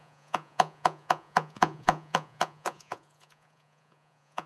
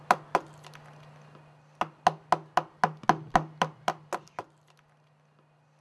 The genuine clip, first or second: second